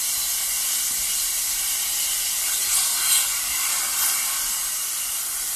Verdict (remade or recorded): recorded